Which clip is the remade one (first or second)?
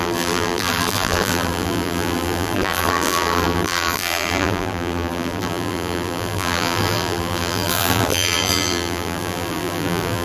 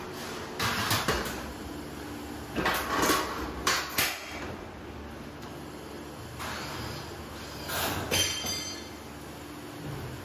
first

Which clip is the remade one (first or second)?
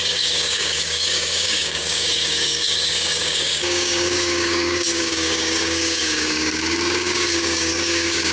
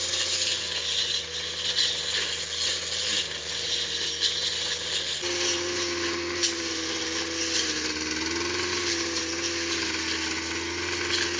first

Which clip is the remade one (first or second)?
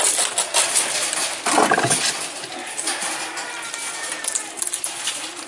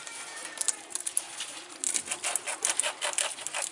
second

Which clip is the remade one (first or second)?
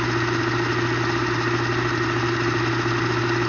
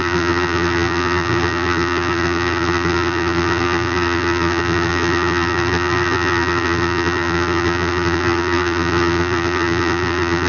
second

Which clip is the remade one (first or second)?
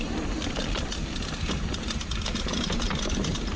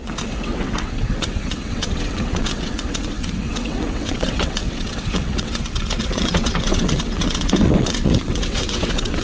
second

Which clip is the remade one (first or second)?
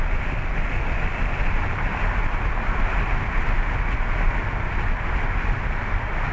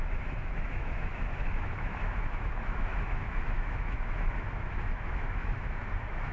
second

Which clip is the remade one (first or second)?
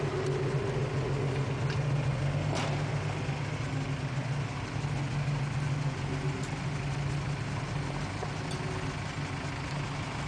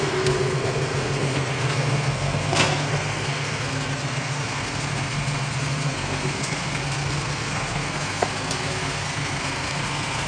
second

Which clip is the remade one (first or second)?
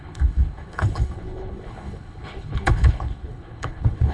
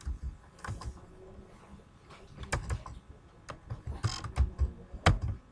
first